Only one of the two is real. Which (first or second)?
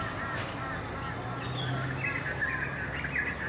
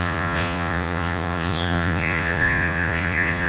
first